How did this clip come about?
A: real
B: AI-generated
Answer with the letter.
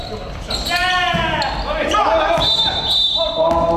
A